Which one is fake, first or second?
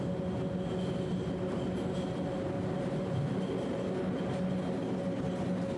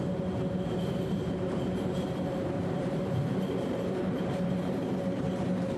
second